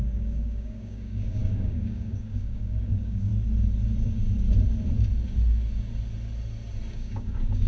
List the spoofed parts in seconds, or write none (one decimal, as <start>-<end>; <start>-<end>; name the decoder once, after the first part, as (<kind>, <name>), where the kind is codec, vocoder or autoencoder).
0.0-3.3 (codec, DAC); 6.9-7.7